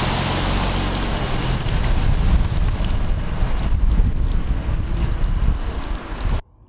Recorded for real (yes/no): yes